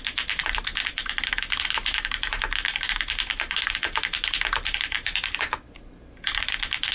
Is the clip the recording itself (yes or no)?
yes